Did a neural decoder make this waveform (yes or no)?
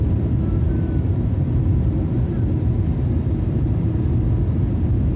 no